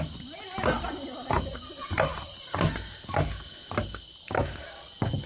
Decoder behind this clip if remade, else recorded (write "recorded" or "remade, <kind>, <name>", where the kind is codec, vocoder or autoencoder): recorded